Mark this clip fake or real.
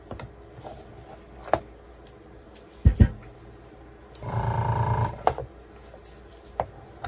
real